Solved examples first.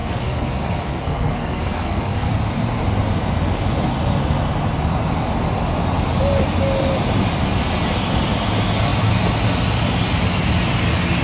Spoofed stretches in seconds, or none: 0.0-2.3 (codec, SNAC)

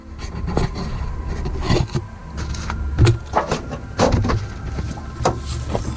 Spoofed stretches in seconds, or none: none

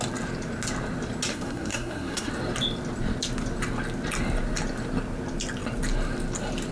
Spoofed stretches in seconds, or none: 1.3-2.3 (codec, SNAC)

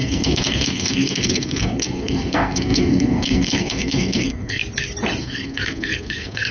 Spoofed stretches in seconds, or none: 0.0-4.6 (codec, SNAC); 5.2-6.5

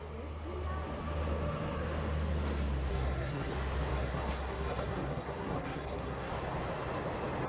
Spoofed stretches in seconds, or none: 2.9-3.5 (codec, SNAC); 3.9-6.3

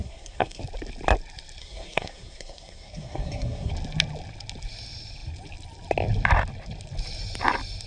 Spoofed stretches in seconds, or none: 0.0-0.6 (codec, SNAC); 1.6-3.7

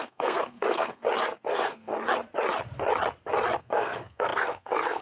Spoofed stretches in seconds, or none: 0.0-1.0 (codec, SNAC); 1.5-1.9; 3.6-5.0

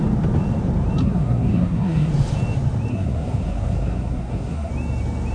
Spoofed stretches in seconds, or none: 1.0-2.1 (codec, SNAC); 2.9-4.7